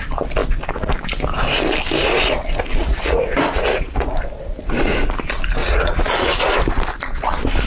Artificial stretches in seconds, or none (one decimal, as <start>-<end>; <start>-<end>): 2.8-4.1; 5.6-6.4